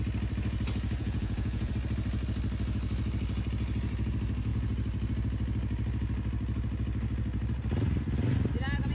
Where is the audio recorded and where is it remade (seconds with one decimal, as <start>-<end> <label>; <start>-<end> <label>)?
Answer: 0.0-1.0 recorded; 1.0-1.7 remade; 1.7-8.9 recorded